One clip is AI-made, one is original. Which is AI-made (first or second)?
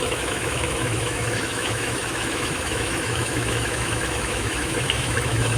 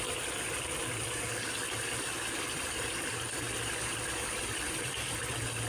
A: first